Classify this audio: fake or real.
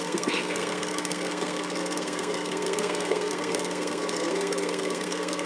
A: fake